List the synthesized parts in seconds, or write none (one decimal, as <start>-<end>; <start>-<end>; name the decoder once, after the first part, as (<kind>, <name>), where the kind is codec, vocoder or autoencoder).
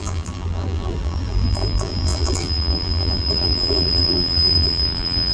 0.0-5.3 (vocoder, BigVGAN v2)